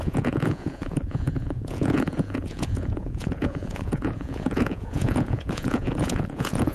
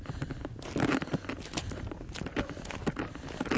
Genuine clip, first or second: second